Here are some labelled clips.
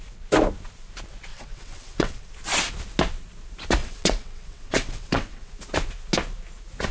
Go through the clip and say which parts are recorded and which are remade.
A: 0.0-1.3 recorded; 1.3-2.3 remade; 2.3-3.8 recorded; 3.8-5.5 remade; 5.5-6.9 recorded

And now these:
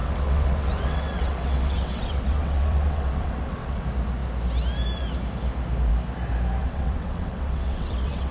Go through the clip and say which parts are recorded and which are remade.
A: 0.0-3.8 remade; 3.8-6.6 recorded; 6.6-8.3 remade

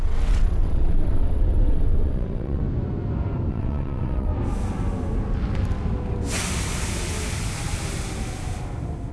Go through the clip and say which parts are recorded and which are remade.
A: 0.0-2.6 remade; 2.6-3.5 recorded; 3.5-4.3 remade; 4.3-9.1 recorded